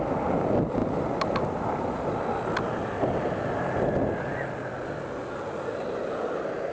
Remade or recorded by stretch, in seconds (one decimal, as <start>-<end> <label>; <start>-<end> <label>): 0.0-6.7 recorded